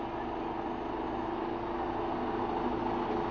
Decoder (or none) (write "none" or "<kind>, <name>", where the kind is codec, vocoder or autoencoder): none